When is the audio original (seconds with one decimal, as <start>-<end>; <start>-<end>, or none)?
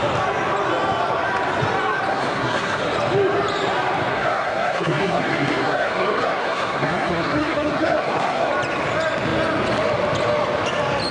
0.0-2.1; 2.8-4.1; 8.5-11.1